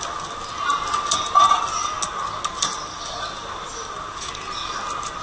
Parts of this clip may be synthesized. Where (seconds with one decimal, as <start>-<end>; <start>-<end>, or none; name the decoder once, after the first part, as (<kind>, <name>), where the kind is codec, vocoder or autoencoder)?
none